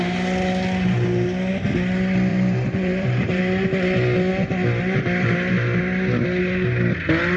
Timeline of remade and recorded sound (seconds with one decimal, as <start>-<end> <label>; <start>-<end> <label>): 0.0-2.3 recorded; 2.3-3.4 remade; 3.4-7.4 recorded